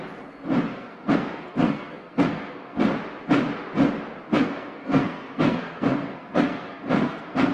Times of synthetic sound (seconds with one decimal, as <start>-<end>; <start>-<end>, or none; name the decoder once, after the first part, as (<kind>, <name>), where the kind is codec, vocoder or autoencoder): 0.7-2.8 (codec, SNAC); 4.3-7.5